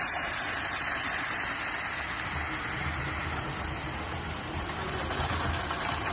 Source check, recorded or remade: recorded